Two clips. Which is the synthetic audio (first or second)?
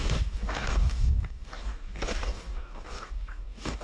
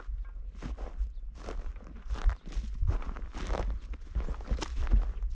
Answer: first